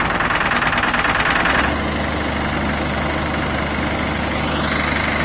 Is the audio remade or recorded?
recorded